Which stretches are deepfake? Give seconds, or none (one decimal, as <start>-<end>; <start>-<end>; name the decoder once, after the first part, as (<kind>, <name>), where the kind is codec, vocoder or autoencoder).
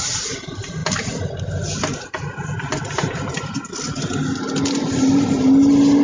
none